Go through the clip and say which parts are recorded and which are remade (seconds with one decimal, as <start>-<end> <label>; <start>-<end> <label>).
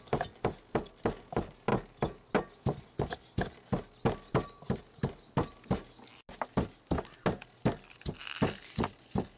0.0-9.4 recorded